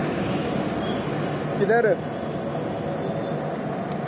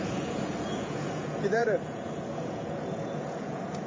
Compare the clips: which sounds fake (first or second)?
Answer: second